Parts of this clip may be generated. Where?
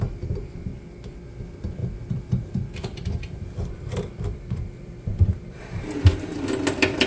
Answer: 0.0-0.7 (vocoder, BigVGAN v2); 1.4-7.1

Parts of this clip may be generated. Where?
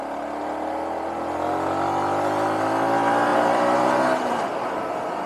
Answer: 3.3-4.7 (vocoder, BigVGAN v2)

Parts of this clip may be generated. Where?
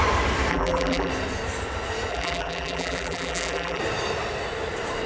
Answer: 0.5-1.1 (vocoder, BigVGAN v2); 2.1-3.8